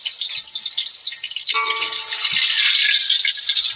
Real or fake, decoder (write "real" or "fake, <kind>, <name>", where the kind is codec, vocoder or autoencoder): real